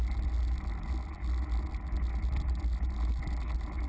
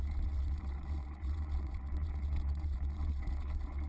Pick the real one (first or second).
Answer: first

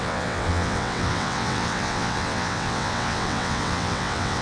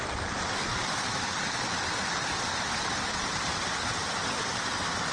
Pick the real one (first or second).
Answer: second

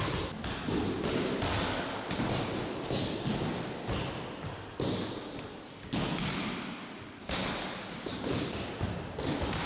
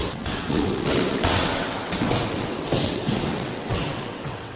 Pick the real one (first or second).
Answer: first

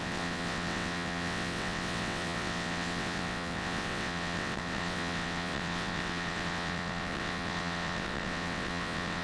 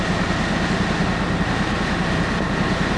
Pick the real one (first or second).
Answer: second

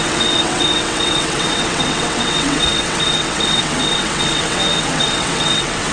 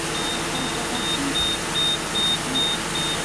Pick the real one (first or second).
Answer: second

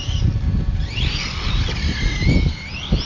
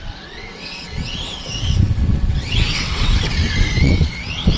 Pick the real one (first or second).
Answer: first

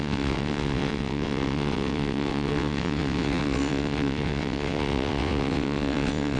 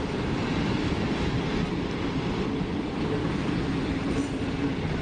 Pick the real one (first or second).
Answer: second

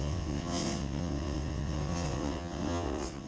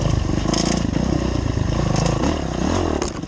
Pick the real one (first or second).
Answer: second